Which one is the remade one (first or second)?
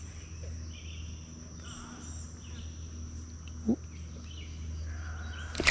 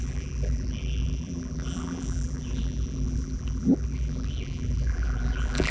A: second